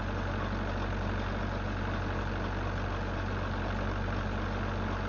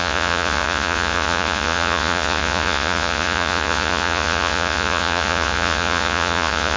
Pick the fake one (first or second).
second